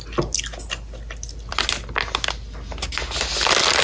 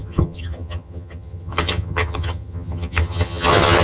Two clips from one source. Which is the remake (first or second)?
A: second